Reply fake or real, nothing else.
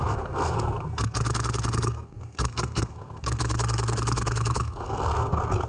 fake